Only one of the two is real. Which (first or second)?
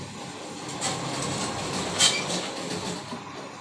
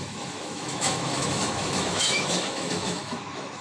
first